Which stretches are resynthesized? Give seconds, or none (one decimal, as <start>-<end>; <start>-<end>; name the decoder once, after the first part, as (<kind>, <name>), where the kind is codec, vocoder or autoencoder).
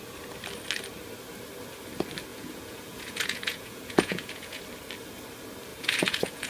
2.3-4.6 (vocoder, Vocos); 5.7-6.5